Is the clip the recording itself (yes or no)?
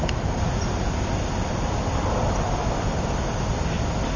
yes